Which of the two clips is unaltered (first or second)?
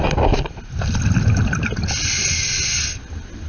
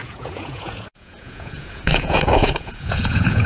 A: first